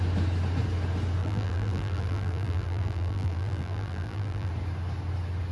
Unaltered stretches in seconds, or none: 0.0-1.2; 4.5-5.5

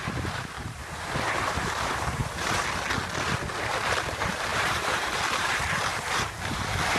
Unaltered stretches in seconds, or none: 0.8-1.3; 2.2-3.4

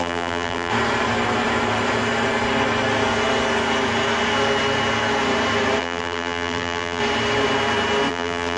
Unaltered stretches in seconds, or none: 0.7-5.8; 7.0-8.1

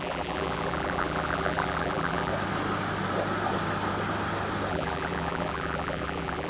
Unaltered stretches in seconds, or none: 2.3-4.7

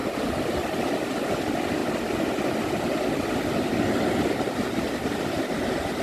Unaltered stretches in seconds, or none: 0.9-6.0